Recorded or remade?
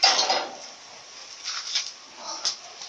recorded